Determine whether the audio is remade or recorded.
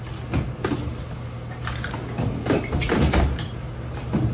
recorded